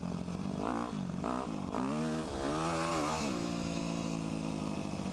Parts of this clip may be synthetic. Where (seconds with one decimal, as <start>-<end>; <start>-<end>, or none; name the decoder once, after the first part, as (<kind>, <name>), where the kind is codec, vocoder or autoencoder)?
2.9-3.8 (autoencoder, DAC-VAE)